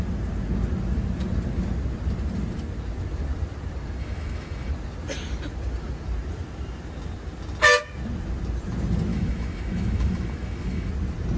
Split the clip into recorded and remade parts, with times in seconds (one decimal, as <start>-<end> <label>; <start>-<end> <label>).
0.0-4.0 recorded; 4.0-4.7 remade; 4.7-9.1 recorded; 9.1-10.9 remade; 10.9-11.4 recorded